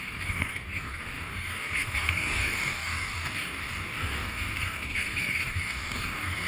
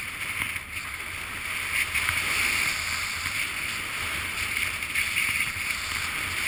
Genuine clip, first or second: second